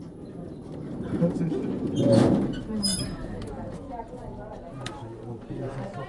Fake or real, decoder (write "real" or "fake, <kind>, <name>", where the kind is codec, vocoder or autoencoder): fake, vocoder, BigVGAN v2